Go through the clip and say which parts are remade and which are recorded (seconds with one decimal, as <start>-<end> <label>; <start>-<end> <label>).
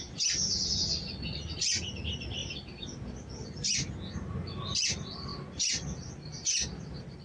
0.0-7.2 recorded